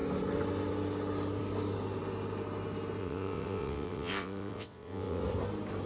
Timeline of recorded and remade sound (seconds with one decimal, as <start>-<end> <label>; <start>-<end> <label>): 0.0-3.0 recorded; 3.0-5.2 remade; 5.2-5.9 recorded